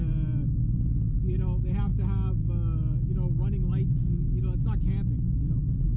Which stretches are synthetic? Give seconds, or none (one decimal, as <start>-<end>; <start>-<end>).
none